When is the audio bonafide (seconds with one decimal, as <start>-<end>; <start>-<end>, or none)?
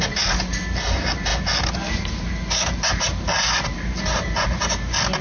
0.0-5.2